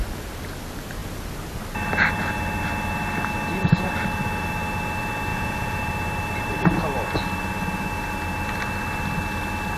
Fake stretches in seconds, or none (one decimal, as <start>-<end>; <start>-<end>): 5.3-5.8